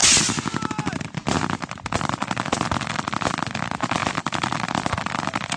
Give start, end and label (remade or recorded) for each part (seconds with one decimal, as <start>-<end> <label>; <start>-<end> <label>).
0.0-5.6 recorded